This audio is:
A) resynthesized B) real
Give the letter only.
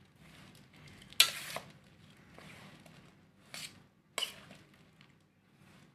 B